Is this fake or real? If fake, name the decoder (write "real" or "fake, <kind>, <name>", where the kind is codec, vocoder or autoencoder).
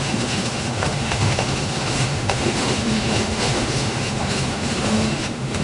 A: fake, autoencoder, DAC-VAE